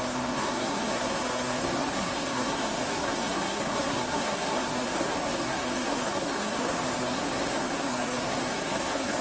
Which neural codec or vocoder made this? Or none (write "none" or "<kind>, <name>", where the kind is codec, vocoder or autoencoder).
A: codec, SNAC